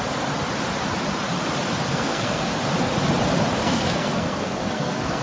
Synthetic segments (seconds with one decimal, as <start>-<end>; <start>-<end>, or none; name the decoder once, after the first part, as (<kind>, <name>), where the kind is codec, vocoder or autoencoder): 1.9-2.5 (codec, SNAC); 3.6-5.2